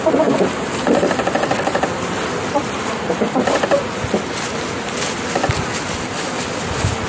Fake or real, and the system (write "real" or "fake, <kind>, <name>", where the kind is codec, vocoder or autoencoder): real